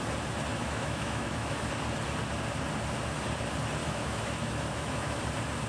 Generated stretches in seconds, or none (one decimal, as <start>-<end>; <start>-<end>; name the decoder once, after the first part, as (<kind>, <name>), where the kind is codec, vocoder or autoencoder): 0.5-1.7 (autoencoder, DAC-VAE); 3.8-5.2